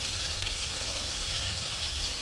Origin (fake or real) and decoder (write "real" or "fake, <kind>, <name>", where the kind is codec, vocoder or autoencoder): fake, codec, SNAC